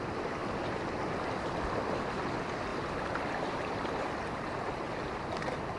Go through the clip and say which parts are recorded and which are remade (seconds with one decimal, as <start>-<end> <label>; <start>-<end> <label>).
0.0-0.4 recorded; 0.4-1.2 remade; 1.2-2.7 recorded; 2.7-5.8 remade